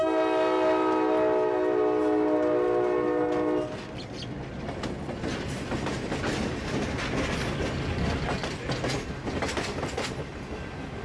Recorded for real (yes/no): yes